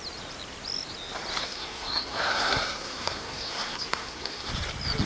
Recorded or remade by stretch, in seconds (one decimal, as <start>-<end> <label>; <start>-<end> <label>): 0.0-1.4 recorded; 1.4-4.5 remade; 4.5-5.1 recorded